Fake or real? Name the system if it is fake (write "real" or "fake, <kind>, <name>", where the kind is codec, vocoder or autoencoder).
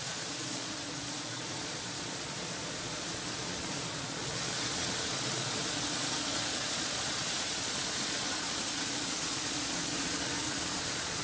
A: fake, vocoder, Vocos